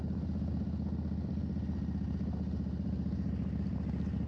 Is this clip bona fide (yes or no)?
yes